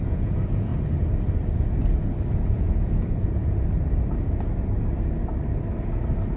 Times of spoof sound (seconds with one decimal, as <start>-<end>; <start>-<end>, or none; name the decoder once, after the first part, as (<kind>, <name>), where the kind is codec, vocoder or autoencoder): 0.0-0.7 (vocoder, Vocos); 2.4-3.4

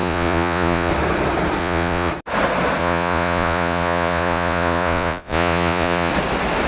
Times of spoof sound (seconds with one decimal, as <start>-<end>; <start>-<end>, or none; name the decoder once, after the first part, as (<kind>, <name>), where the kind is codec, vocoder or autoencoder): 0.0-0.9 (vocoder, Vocos); 1.6-2.1; 2.8-6.1

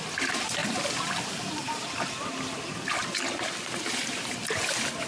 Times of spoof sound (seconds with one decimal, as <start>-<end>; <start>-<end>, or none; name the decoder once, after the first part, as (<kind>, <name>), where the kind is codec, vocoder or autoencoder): none

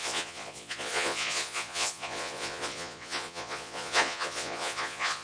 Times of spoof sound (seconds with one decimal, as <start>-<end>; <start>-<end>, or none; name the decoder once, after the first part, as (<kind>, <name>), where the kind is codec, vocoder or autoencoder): 0.0-5.2 (vocoder, Vocos)

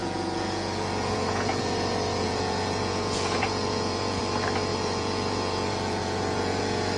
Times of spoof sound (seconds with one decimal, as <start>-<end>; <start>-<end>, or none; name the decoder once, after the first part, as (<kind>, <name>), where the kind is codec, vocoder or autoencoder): 0.0-4.2 (vocoder, Vocos); 4.7-6.6

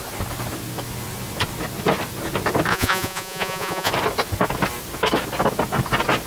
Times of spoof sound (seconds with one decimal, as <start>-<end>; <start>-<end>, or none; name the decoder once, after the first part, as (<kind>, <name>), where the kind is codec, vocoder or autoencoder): 2.7-3.9 (vocoder, Vocos)

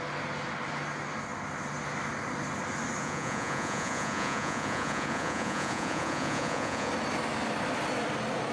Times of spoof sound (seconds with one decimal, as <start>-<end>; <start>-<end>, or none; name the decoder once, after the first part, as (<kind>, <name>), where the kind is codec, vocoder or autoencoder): 3.0-6.9 (vocoder, Vocos)

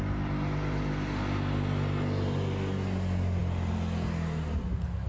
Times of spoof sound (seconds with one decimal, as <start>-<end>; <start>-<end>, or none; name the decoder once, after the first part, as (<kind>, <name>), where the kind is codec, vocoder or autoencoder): none